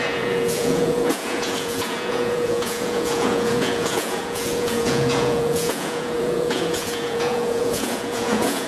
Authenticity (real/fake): fake